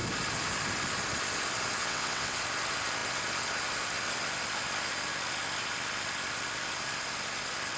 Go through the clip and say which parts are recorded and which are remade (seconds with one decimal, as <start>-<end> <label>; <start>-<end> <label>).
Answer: 0.0-1.8 recorded; 1.8-2.4 remade; 2.4-7.8 recorded